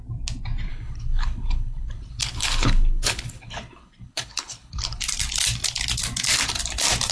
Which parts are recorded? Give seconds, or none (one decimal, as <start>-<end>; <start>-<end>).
0.0-0.7; 5.0-7.1